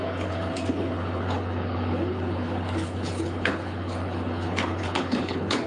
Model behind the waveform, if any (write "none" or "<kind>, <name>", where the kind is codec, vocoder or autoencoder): codec, HILCodec